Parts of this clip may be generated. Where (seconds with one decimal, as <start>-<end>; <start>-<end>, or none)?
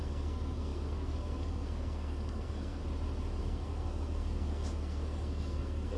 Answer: 0.0-2.8; 3.4-6.0